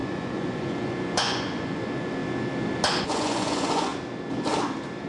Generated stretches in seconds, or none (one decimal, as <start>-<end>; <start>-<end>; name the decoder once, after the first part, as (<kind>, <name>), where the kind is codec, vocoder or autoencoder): 0.0-2.2 (vocoder, Vocos); 3.0-3.9